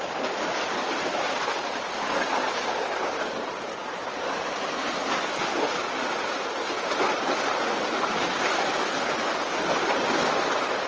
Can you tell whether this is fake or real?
real